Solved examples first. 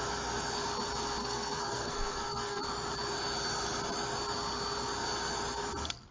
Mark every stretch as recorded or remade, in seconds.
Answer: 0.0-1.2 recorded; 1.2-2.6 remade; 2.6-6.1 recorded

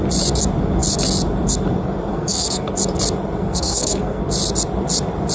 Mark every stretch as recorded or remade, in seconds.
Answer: 0.0-2.1 recorded; 2.1-2.7 remade; 2.7-3.4 recorded; 3.4-4.2 remade; 4.2-5.3 recorded

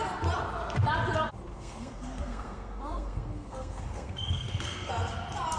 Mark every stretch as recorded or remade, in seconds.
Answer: 0.0-1.5 recorded; 1.5-4.9 remade; 4.9-5.6 recorded

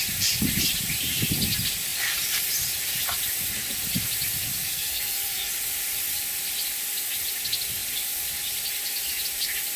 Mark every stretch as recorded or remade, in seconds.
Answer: 0.0-4.6 recorded; 4.6-5.5 remade; 5.5-9.8 recorded